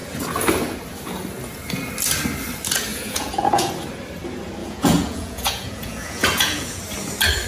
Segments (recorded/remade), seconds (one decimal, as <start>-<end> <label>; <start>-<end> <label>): 0.0-2.9 recorded; 2.9-3.7 remade; 3.7-4.6 recorded; 4.6-6.8 remade; 6.8-7.5 recorded